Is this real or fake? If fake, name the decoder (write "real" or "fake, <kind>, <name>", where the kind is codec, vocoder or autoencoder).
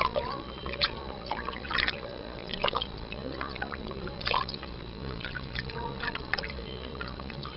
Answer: fake, vocoder, Vocos